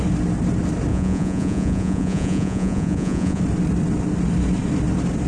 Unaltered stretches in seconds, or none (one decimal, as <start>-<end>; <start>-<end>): 0.0-0.9; 3.4-5.3